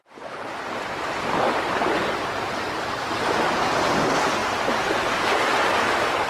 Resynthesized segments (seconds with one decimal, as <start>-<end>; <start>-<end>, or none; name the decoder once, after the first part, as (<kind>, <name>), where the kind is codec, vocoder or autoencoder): 0.0-3.8 (vocoder, BigVGAN v2)